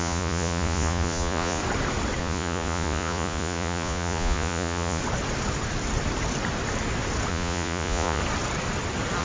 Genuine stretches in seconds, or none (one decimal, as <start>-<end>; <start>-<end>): 1.6-2.2; 5.0-7.3; 8.2-9.2